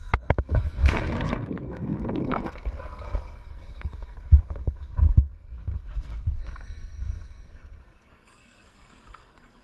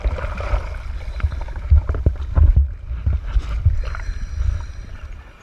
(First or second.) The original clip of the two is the second